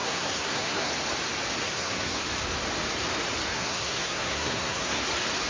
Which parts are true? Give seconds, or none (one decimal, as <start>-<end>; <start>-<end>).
0.9-1.6; 2.2-3.5; 5.0-5.5